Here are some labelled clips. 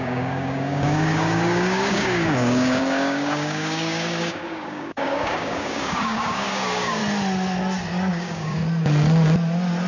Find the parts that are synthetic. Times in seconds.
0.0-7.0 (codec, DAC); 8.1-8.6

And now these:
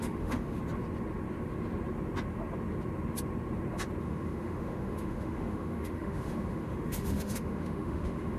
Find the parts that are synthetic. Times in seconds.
0.0-0.6 (autoencoder, DAC-VAE); 4.0-8.4

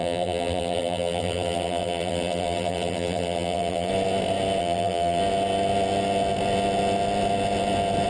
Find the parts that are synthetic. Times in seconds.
0.0-3.9 (vocoder, BigVGAN v2); 4.6-5.2

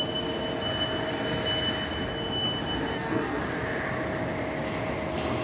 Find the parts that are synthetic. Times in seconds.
2.9-3.4 (codec, SNAC)

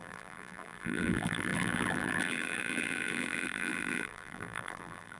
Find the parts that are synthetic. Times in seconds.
0.0-5.2 (vocoder, BigVGAN v2)

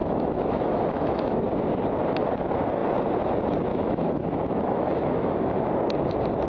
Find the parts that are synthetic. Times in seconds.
0.0-1.4 (autoencoder, DAC-VAE); 3.7-5.7